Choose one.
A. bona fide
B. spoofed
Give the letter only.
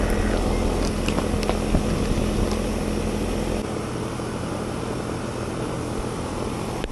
A